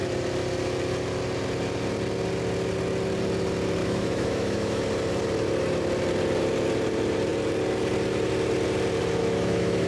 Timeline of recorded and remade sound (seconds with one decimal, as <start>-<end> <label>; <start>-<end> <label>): 0.0-3.8 recorded; 3.8-4.8 remade; 4.8-9.2 recorded; 9.2-9.9 remade